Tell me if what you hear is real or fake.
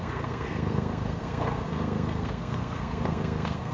fake